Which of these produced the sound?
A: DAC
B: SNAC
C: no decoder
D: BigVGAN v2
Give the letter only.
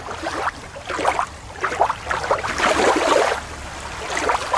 C